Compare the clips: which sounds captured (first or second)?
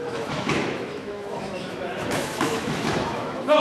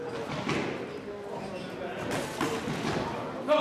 second